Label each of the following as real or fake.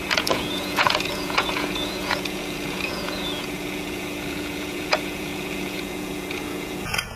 fake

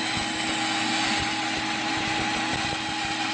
real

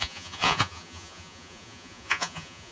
fake